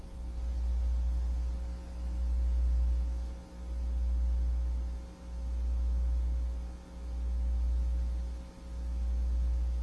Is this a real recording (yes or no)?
yes